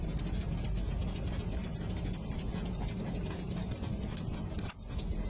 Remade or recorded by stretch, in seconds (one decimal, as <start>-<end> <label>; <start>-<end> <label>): 0.0-5.3 recorded